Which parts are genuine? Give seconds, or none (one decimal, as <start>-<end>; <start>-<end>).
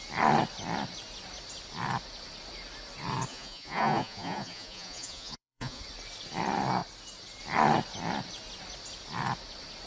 0.0-3.3; 5.8-9.9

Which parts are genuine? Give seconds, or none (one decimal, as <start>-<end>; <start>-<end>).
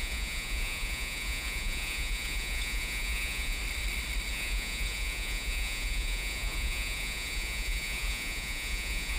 3.6-4.3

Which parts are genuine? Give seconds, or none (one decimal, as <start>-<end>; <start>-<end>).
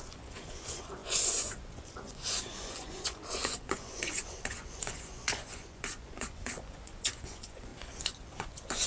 none